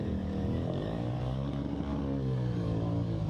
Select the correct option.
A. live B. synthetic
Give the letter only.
B